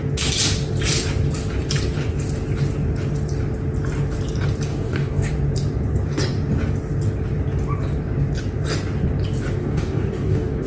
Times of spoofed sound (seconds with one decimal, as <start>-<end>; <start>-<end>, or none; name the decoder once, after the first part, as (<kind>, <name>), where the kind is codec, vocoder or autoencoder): 4.7-5.3 (codec, DAC); 9.6-10.7